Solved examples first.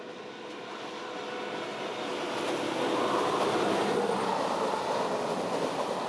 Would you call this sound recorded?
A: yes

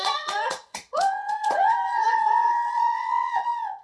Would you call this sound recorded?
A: no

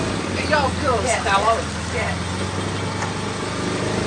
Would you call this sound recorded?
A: yes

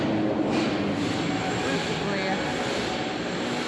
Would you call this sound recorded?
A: yes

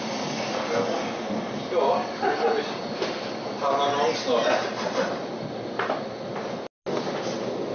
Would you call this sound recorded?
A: yes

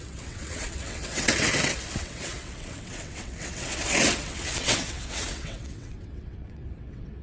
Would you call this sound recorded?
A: no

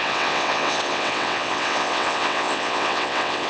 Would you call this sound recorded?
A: no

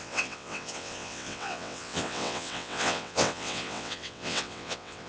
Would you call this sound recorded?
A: no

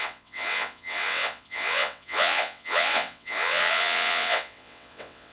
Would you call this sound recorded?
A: no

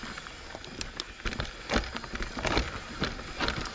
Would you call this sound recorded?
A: yes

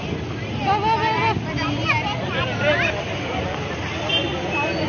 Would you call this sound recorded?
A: yes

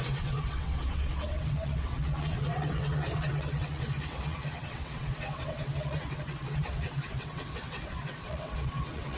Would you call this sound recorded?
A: no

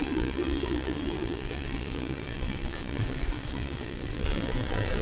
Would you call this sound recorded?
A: no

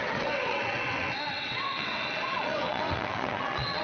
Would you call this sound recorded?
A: no